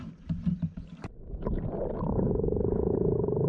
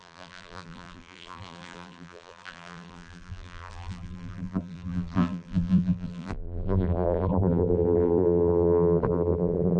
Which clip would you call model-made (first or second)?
second